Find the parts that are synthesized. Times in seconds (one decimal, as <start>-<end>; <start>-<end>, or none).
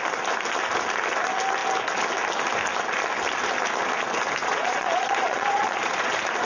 4.4-6.1